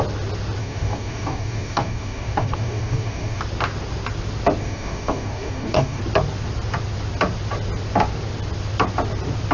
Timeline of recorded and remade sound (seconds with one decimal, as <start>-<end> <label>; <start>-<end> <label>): 0.0-0.6 recorded; 0.6-3.4 remade; 3.4-4.6 recorded; 4.6-6.0 remade; 6.0-9.5 recorded